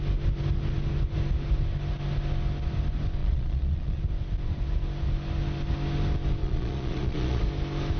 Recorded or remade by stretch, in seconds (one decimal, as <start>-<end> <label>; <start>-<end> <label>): 0.0-3.2 recorded; 3.2-4.0 remade; 4.0-6.4 recorded; 6.4-7.4 remade; 7.4-8.0 recorded